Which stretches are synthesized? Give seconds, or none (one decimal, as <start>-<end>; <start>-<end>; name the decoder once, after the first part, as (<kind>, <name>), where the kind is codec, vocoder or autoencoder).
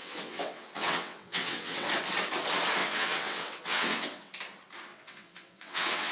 0.0-1.9 (vocoder, WaveNeXt); 2.8-4.3; 4.9-6.1